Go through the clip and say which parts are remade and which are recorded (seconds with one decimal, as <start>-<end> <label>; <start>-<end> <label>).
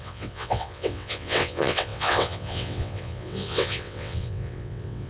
0.0-5.1 remade